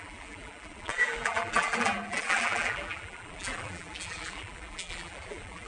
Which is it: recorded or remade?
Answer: remade